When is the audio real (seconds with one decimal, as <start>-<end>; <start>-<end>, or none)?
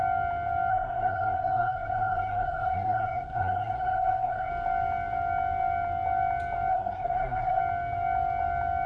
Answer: 0.0-0.7; 4.5-6.7; 7.6-8.9